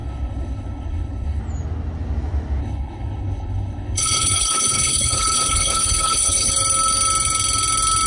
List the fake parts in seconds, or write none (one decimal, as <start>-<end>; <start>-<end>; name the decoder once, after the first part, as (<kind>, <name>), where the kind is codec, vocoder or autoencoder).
0.0-1.4 (codec, HILCodec); 2.6-6.5